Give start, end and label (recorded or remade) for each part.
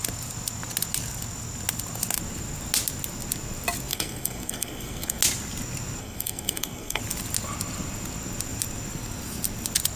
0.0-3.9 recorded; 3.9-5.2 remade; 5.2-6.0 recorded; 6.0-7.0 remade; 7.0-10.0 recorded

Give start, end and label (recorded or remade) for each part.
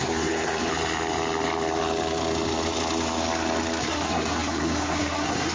0.0-0.7 remade; 0.7-3.8 recorded; 3.8-5.5 remade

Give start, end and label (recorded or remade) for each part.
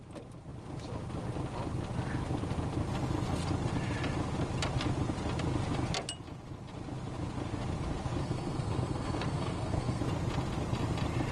0.0-8.2 recorded; 8.2-10.0 remade; 10.0-11.3 recorded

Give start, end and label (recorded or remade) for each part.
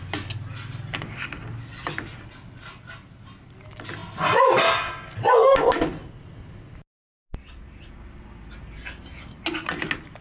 0.0-10.2 recorded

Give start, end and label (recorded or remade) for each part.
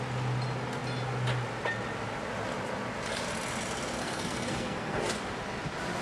0.0-4.0 recorded; 4.0-5.1 remade; 5.1-6.0 recorded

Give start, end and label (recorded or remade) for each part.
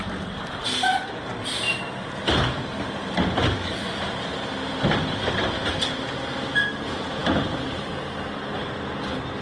0.0-9.4 recorded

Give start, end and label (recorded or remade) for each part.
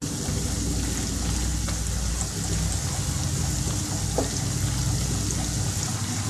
0.0-6.3 recorded